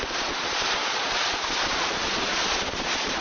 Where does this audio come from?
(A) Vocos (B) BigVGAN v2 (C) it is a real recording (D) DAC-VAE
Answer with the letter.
A